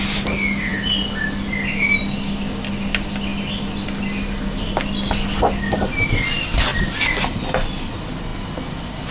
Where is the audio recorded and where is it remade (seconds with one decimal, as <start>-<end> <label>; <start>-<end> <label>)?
0.0-9.1 recorded